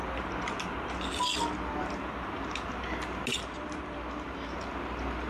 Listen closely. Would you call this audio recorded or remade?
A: recorded